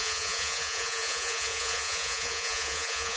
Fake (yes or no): yes